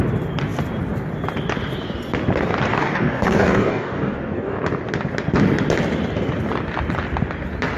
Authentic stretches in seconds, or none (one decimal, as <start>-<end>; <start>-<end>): 0.0-2.7; 4.6-7.8